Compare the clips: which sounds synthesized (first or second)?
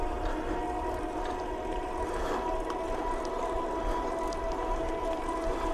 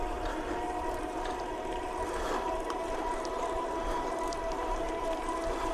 second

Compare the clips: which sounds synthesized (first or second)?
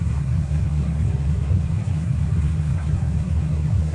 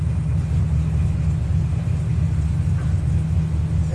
first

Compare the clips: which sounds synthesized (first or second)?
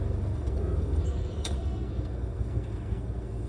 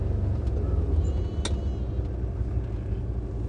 first